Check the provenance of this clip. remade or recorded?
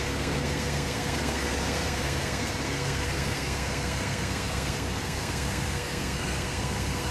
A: remade